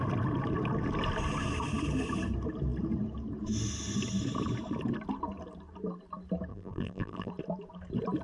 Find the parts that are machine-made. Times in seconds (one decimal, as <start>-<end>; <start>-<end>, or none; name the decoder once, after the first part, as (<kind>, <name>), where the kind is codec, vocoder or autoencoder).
6.5-7.3 (vocoder, BigVGAN v2)